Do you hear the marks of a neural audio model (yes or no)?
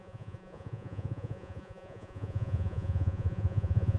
yes